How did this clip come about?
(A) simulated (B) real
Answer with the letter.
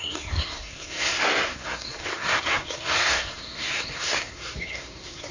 A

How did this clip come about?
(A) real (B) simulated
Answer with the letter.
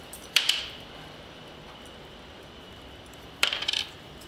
B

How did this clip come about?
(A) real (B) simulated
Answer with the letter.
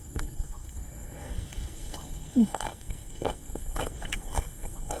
B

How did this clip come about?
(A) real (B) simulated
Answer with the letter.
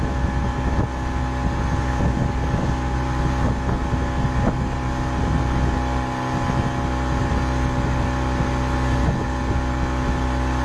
A